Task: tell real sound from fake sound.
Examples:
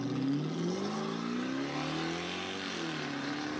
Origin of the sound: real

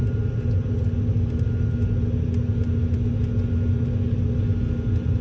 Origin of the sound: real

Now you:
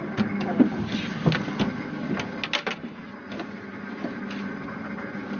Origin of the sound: real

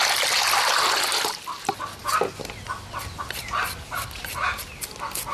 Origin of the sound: real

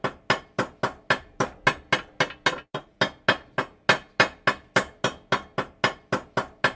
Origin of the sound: real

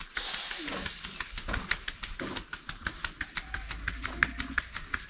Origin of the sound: real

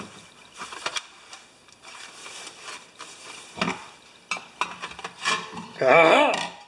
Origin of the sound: fake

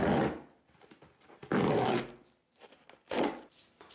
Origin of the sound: real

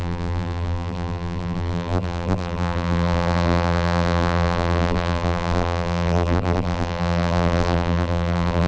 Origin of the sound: fake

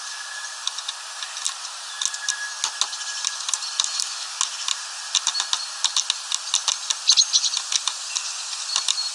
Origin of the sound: real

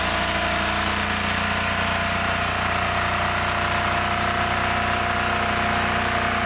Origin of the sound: real